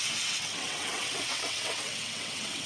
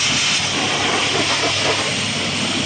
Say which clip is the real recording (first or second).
second